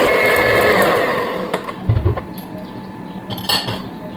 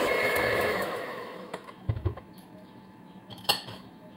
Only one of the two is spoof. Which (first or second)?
second